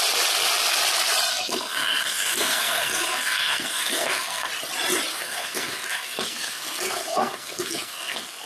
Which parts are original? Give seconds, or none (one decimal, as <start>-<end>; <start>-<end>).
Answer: 0.0-1.3; 4.5-5.1